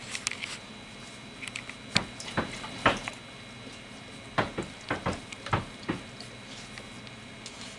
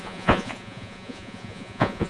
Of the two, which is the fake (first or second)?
second